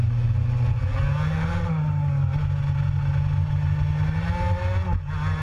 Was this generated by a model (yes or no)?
no